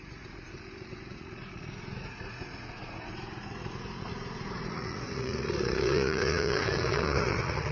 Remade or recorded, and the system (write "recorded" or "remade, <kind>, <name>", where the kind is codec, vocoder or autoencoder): remade, vocoder, Vocos